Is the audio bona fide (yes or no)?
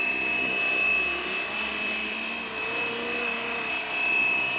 yes